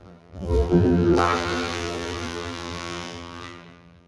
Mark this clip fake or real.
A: fake